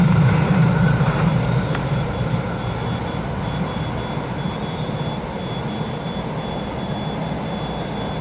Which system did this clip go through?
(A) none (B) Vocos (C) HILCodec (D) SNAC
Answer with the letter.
A